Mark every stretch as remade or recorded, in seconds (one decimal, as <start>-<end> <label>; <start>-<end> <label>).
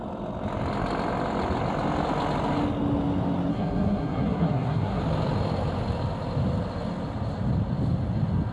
0.0-3.5 recorded; 3.5-5.0 remade; 5.0-8.5 recorded